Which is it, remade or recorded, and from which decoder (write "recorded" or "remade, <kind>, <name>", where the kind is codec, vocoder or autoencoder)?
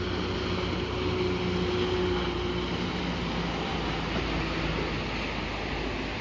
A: recorded